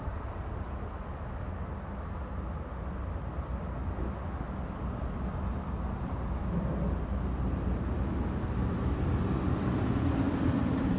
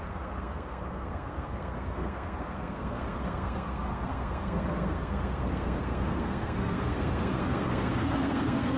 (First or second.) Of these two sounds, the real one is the first